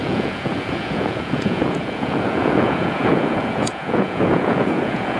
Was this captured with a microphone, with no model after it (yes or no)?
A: no